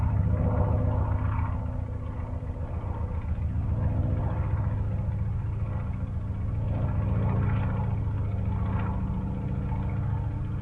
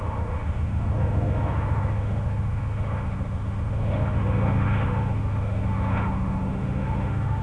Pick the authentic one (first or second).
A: first